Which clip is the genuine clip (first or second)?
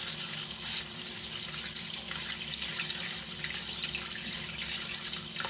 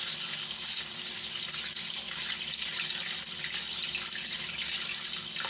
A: second